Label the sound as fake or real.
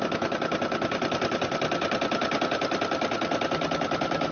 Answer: fake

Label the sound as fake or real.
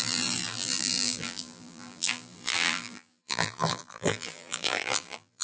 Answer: fake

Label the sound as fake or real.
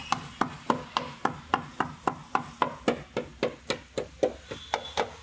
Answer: real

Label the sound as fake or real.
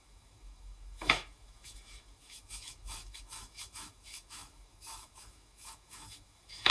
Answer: fake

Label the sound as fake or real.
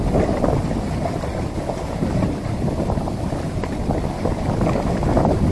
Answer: fake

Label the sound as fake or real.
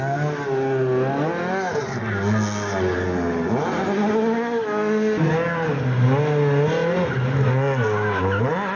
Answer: real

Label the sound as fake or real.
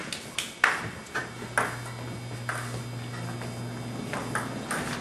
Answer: real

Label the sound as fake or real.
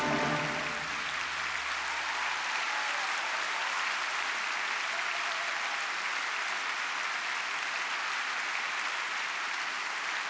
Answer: real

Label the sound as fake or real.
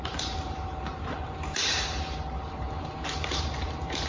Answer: fake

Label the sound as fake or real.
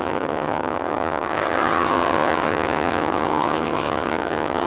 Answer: fake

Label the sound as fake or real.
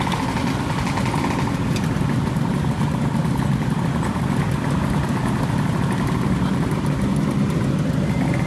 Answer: real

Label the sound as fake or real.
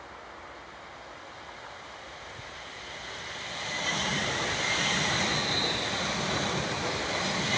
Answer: real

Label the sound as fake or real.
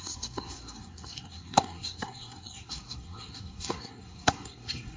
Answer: fake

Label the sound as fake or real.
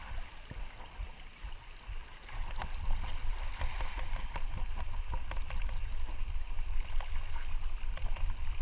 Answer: real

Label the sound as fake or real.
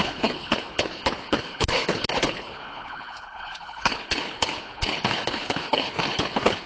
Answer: fake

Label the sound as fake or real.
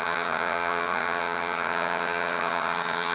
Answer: fake